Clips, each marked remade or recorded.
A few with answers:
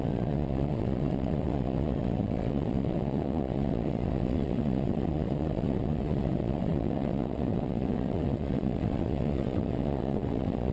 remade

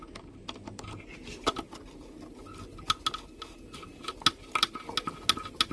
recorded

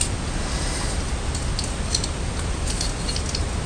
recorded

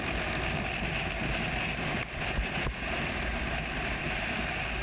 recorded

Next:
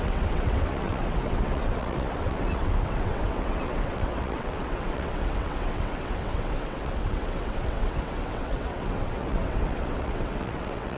remade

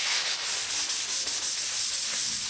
recorded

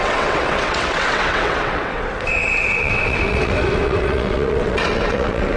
remade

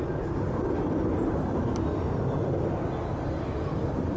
recorded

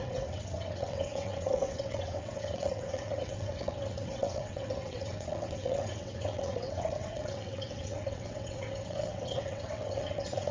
remade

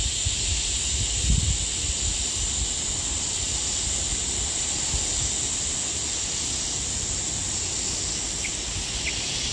recorded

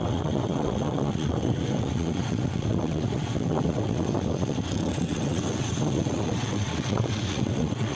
remade